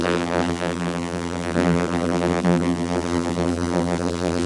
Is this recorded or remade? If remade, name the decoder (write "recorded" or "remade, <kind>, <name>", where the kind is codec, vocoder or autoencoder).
remade, vocoder, BigVGAN v2